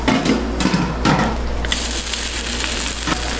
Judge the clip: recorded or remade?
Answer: recorded